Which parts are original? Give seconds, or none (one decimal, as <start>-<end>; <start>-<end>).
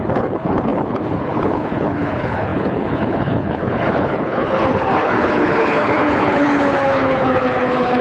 none